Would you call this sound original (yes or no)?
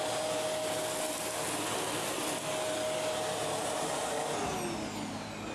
yes